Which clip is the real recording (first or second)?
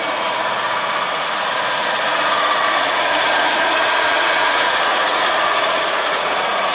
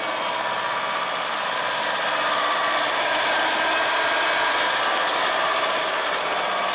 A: second